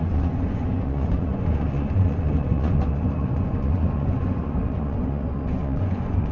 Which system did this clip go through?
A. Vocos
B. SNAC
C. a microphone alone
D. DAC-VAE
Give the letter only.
A